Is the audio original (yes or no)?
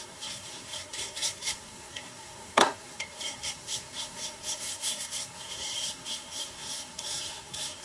no